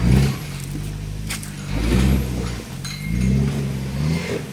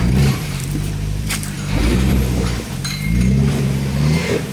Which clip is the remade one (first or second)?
second